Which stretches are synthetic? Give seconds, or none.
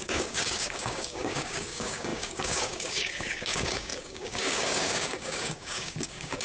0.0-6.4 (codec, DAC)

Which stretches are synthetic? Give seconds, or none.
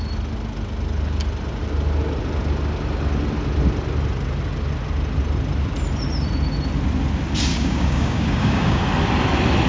7.5-8.8 (codec, DAC)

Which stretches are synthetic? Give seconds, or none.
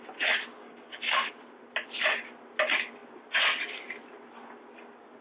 0.6-1.3 (codec, DAC)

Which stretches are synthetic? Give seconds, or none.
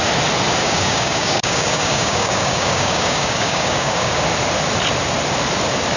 0.6-4.2 (codec, DAC)